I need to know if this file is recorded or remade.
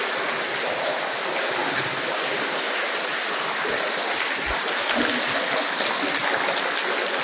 recorded